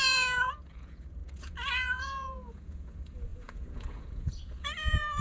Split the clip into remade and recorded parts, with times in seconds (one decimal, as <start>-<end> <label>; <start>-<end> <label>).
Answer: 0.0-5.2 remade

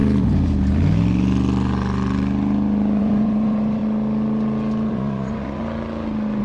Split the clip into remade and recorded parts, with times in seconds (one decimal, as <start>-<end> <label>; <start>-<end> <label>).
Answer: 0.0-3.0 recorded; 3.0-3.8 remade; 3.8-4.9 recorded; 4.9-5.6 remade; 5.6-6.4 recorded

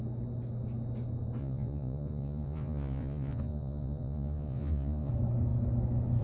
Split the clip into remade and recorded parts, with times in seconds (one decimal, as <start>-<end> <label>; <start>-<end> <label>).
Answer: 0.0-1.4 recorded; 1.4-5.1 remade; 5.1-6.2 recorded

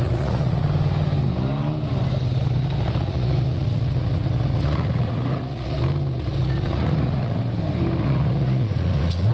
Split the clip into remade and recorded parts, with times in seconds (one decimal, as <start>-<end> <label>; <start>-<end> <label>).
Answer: 0.0-0.6 remade; 0.6-3.0 recorded; 3.0-5.8 remade; 5.8-6.4 recorded; 6.4-7.4 remade; 7.4-8.0 recorded; 8.0-9.3 remade

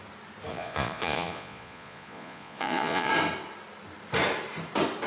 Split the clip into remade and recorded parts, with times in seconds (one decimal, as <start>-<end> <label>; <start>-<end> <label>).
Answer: 0.0-0.5 recorded; 0.5-3.1 remade; 3.1-5.1 recorded

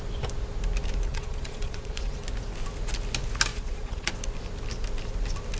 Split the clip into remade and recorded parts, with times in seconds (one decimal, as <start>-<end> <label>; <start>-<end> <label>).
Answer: 0.0-1.1 recorded; 1.1-2.2 remade; 2.2-3.5 recorded; 3.5-4.1 remade; 4.1-5.6 recorded

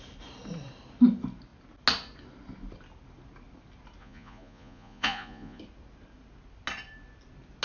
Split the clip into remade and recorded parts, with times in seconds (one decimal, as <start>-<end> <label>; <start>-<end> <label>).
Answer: 0.0-4.0 recorded; 4.0-5.6 remade; 5.6-7.6 recorded

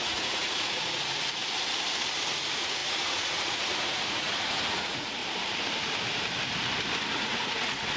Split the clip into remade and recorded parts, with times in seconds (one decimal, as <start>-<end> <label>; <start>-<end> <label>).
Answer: 0.0-1.4 remade; 1.4-2.3 recorded; 2.3-5.2 remade; 5.2-7.0 recorded; 7.0-8.0 remade